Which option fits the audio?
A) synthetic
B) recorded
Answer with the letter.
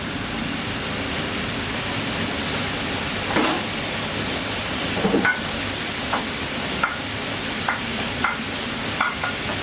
B